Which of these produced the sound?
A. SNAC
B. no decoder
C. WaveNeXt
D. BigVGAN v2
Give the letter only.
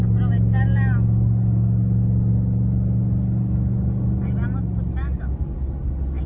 B